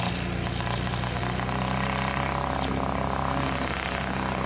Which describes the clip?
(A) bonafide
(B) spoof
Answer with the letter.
A